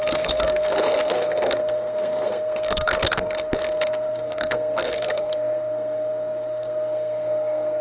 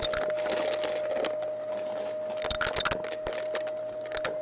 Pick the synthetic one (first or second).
first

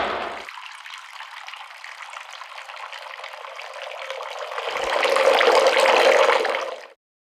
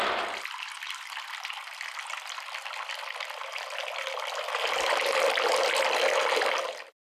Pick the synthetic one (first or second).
second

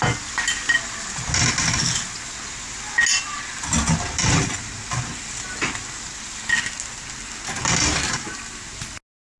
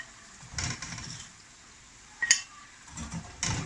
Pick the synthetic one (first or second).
second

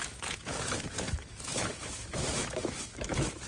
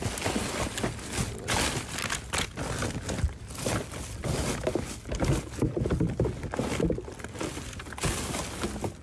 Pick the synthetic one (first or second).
first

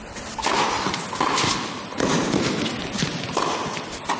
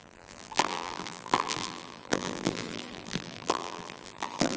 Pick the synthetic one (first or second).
second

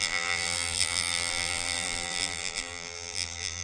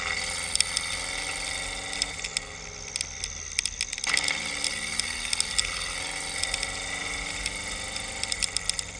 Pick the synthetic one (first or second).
first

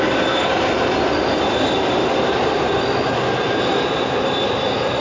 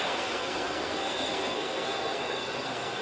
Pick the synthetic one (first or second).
second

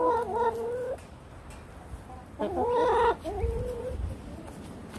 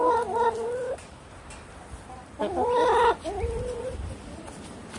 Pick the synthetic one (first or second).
second